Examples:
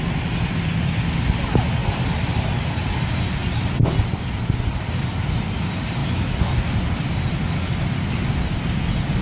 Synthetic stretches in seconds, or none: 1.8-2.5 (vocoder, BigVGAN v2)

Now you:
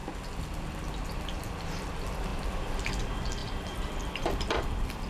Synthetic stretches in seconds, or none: 2.3-2.9 (vocoder, BigVGAN v2); 3.4-4.4

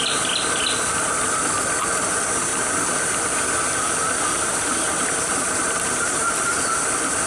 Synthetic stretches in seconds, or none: 2.5-3.0 (vocoder, BigVGAN v2); 4.5-6.5

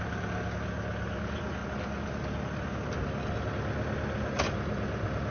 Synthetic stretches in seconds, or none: none

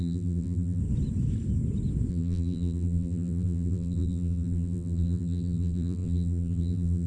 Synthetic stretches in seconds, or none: 0.0-0.8 (vocoder, BigVGAN v2); 2.1-7.1